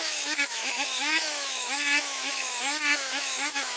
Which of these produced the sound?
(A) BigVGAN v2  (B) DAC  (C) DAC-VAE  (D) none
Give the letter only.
C